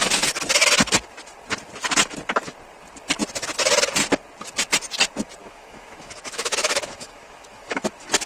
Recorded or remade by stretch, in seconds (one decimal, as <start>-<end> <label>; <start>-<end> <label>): 0.0-5.4 recorded; 5.4-7.9 remade; 7.9-8.3 recorded